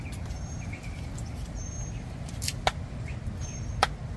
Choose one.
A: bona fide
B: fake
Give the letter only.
A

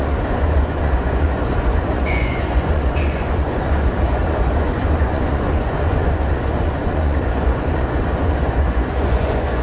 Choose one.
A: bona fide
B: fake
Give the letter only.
B